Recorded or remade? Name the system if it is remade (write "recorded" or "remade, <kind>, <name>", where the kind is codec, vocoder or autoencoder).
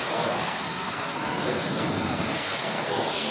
remade, codec, SNAC